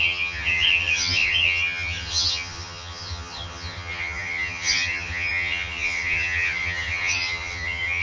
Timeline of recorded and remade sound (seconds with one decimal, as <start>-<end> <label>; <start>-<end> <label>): 0.0-8.0 remade

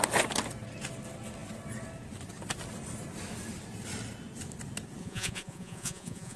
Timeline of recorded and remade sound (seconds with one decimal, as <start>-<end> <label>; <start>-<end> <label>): 0.0-5.0 recorded; 5.0-6.4 remade

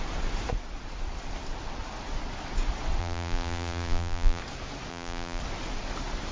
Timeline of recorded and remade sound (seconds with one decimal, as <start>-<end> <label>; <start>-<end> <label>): 0.0-3.0 recorded; 3.0-4.4 remade; 4.4-4.9 recorded; 4.9-5.4 remade; 5.4-6.3 recorded

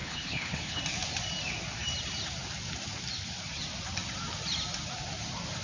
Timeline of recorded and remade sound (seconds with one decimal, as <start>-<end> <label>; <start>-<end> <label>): 0.0-0.8 remade; 0.8-5.6 recorded

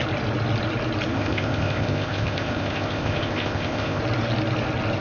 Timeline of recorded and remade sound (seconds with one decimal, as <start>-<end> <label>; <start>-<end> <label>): 0.0-1.1 recorded; 1.1-4.0 remade; 4.0-5.0 recorded

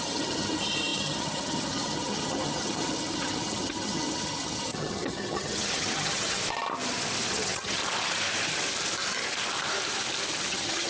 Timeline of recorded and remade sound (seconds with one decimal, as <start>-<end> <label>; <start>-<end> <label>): 0.0-6.4 remade; 6.4-7.3 recorded; 7.3-7.8 remade; 7.8-10.5 recorded; 10.5-10.9 remade

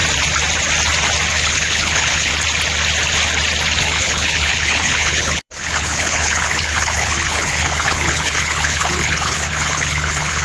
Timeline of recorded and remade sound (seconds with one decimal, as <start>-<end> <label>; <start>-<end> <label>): 0.0-1.3 recorded; 1.3-2.3 remade; 2.3-3.8 recorded; 3.8-10.4 remade

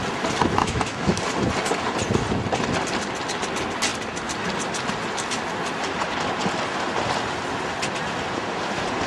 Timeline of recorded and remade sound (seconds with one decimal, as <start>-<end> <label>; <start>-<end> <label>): 0.0-0.6 recorded; 0.6-1.2 remade; 1.2-9.1 recorded